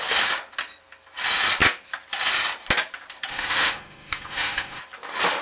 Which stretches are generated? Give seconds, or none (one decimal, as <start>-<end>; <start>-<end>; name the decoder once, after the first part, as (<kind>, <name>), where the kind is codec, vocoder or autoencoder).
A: 3.3-4.8 (autoencoder, DAC-VAE)